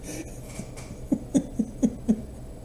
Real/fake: real